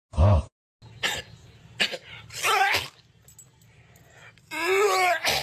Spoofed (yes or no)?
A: no